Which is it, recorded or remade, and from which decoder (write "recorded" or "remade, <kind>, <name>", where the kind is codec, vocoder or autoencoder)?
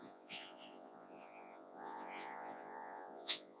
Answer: remade, vocoder, Vocos